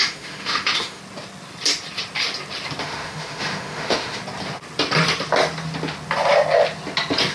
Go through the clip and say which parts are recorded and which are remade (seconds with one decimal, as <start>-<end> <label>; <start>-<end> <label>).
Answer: 0.0-1.0 remade; 1.0-2.8 recorded; 2.8-4.2 remade; 4.2-7.3 recorded